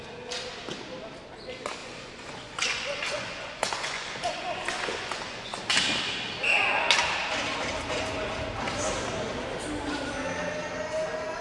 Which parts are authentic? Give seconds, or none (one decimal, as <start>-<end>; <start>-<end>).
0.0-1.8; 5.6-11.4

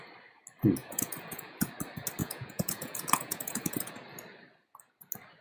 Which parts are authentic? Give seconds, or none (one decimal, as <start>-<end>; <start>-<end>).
0.0-0.8; 1.7-2.2; 3.9-5.4

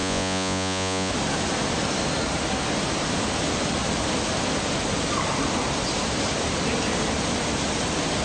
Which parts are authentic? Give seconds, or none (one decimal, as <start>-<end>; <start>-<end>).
1.1-8.2

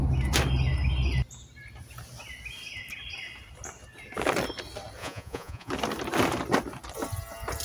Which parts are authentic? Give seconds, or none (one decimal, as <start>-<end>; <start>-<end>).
0.0-5.0; 5.7-7.6

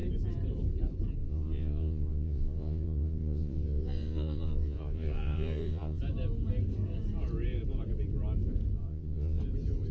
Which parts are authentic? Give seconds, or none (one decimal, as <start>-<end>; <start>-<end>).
0.0-1.2; 6.0-8.8; 9.4-9.9

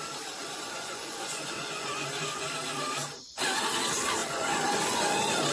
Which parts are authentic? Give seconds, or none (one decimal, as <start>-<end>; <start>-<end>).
0.0-0.4; 2.5-4.2; 5.0-5.5